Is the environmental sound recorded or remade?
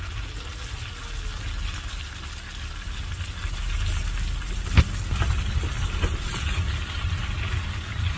recorded